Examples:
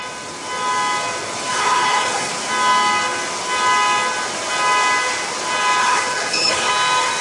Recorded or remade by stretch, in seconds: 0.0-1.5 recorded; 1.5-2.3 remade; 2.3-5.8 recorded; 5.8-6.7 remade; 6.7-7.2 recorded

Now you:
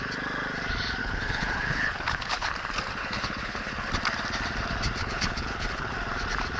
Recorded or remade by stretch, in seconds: 0.0-1.0 recorded; 1.0-2.5 remade; 2.5-3.0 recorded; 3.0-3.9 remade; 3.9-5.0 recorded; 5.0-5.9 remade; 5.9-6.6 recorded